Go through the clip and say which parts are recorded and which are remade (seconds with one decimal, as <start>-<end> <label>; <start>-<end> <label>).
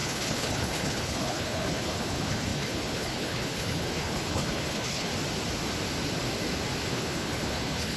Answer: 0.0-5.1 remade; 5.1-6.9 recorded; 6.9-8.0 remade